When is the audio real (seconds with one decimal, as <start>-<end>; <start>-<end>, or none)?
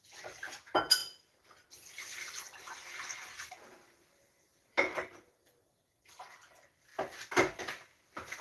0.0-8.4